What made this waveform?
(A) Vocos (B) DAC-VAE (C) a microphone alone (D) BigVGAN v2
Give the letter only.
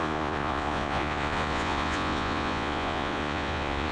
A